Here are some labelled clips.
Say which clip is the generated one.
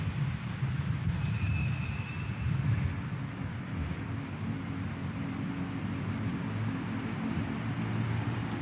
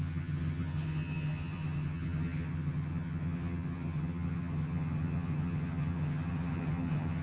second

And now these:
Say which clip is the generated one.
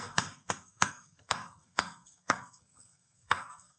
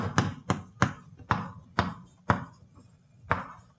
first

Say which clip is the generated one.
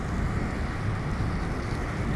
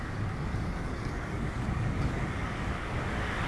second